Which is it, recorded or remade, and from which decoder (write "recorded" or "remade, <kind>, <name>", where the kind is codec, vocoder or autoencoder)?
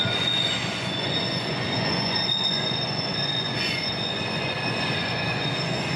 remade, vocoder, Vocos